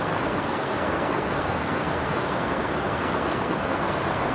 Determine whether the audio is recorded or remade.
remade